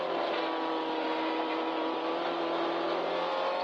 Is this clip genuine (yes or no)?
yes